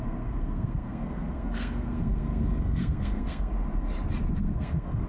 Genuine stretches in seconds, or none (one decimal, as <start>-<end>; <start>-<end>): 3.5-4.3